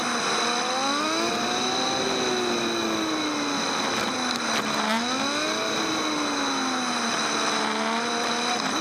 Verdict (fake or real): real